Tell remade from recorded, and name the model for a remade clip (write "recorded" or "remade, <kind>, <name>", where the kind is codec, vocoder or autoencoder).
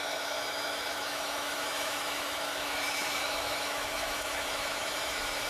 remade, autoencoder, DAC-VAE